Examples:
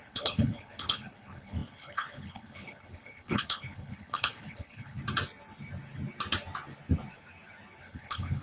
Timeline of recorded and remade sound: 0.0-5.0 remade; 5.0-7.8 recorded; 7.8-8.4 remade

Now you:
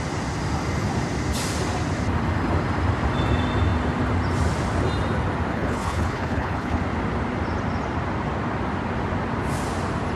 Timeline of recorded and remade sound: 0.0-5.5 recorded; 5.5-6.8 remade; 6.8-10.2 recorded